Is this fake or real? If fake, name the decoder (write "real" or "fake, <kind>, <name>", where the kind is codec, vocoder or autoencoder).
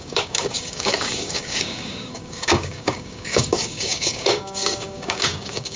fake, codec, DAC